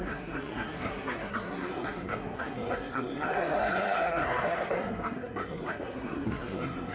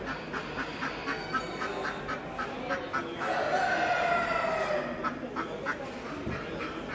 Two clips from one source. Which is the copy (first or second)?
first